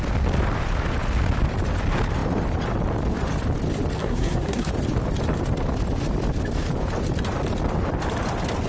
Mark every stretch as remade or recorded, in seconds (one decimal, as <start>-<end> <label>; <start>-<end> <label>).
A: 0.0-4.0 recorded; 4.0-4.7 remade; 4.7-8.7 recorded